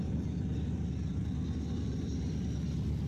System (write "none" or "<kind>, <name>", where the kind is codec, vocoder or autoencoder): vocoder, BigVGAN v2